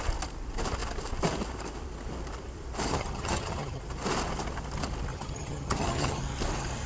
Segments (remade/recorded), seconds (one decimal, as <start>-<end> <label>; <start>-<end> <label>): 0.0-2.9 recorded; 2.9-3.8 remade; 3.8-5.1 recorded; 5.1-6.2 remade; 6.2-6.9 recorded

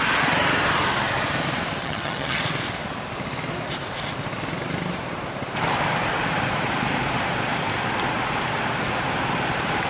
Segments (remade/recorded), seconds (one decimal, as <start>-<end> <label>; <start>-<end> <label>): 0.0-1.8 recorded; 1.8-2.4 remade; 2.4-9.9 recorded